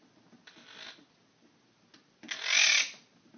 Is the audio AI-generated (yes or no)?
no